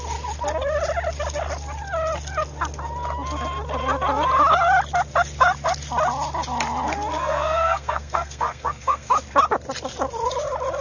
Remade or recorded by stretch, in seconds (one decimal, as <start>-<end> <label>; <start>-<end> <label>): 0.0-7.1 recorded; 7.1-9.1 remade; 9.1-10.8 recorded